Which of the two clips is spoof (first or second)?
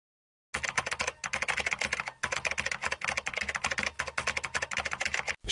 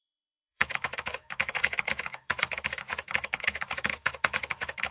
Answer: second